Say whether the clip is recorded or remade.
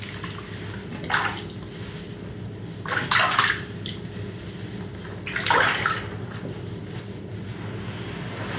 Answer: recorded